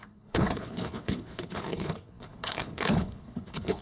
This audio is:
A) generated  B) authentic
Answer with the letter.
A